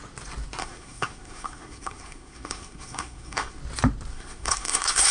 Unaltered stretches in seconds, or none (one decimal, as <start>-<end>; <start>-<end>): 0.0-0.6; 3.6-4.1